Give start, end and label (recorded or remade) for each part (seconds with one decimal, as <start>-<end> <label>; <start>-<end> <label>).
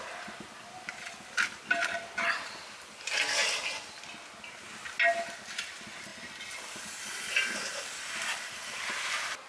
0.0-6.1 recorded; 6.1-6.8 remade; 6.8-9.5 recorded